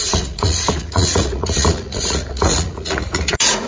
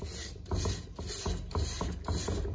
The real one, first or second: second